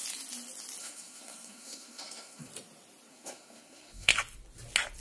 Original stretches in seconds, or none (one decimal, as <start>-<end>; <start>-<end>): 0.0-0.8; 2.5-3.1; 4.1-5.0